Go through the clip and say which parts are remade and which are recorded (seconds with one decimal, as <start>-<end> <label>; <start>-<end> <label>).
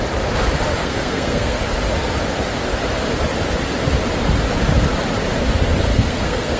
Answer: 0.0-0.8 recorded; 0.8-1.6 remade; 1.6-5.9 recorded; 5.9-6.6 remade